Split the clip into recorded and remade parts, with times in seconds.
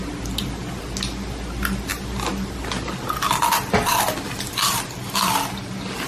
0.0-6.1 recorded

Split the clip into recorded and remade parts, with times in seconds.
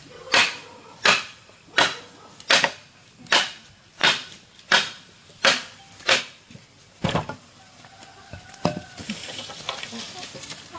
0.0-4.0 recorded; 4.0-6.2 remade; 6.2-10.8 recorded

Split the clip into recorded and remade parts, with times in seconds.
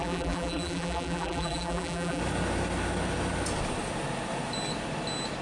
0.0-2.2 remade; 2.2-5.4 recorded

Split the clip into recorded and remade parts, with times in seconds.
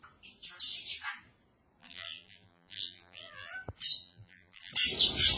0.0-1.8 recorded; 1.8-3.5 remade; 3.5-4.0 recorded; 4.0-4.7 remade; 4.7-5.4 recorded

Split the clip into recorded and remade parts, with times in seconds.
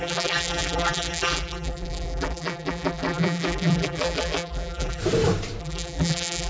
0.0-5.0 remade; 5.0-5.6 recorded; 5.6-6.5 remade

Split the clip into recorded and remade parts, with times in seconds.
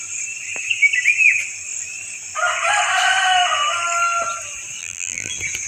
0.0-4.8 recorded; 4.8-5.3 remade; 5.3-5.7 recorded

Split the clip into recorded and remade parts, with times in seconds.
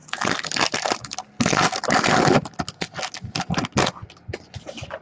0.0-5.0 recorded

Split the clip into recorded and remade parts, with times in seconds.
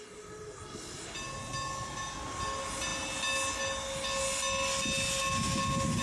0.0-6.0 recorded